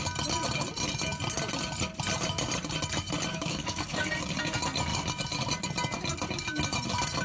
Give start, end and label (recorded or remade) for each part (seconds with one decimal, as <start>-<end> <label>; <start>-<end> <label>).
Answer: 0.0-3.3 recorded; 3.3-4.1 remade; 4.1-7.2 recorded